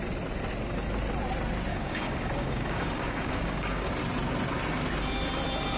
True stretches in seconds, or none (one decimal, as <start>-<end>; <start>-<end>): 0.0-1.7; 3.9-5.8